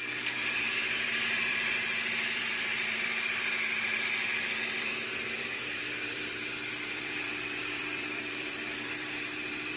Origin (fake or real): fake